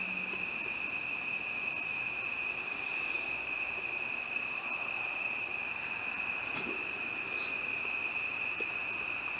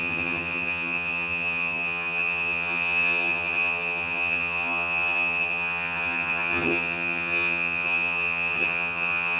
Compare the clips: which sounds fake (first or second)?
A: second